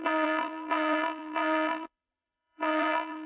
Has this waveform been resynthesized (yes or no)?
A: yes